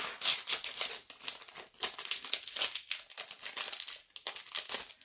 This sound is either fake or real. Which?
real